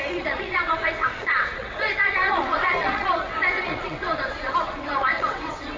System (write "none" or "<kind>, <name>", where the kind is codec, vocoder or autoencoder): vocoder, WaveNeXt